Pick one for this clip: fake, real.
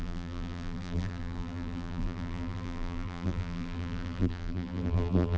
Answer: fake